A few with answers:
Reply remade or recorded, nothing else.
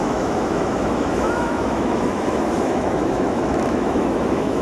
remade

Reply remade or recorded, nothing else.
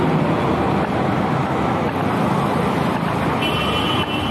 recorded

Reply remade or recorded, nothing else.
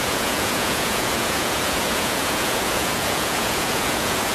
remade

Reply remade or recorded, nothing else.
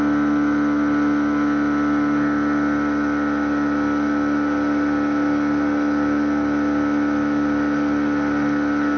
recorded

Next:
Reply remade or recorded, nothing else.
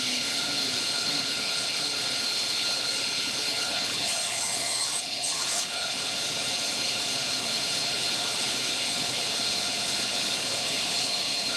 remade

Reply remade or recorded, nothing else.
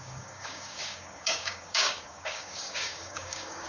remade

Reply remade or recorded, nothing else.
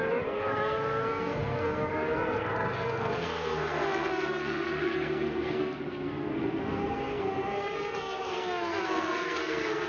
remade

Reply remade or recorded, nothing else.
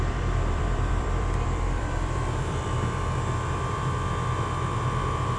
remade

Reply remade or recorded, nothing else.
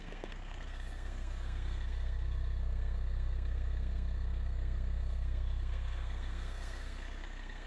remade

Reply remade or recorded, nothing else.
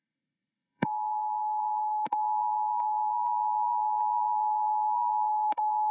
remade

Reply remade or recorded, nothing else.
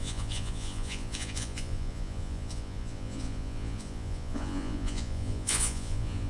remade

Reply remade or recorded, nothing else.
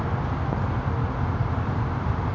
recorded